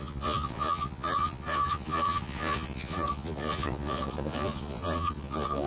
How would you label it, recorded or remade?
remade